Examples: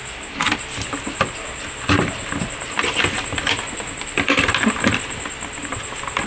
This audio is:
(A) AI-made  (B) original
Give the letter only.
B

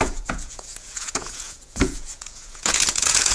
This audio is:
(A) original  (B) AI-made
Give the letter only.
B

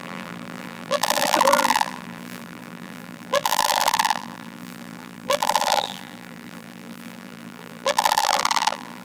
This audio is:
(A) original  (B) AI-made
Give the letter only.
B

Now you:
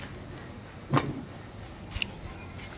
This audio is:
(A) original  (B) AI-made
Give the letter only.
A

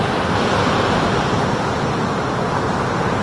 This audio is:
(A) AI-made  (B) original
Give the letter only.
B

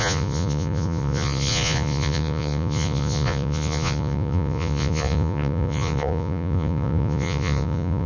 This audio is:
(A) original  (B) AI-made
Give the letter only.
B